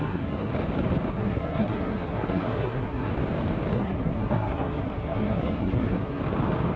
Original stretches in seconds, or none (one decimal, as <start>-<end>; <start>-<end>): 0.5-1.1; 3.1-3.7; 6.2-6.8